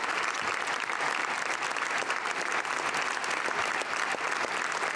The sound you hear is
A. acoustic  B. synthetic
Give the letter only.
A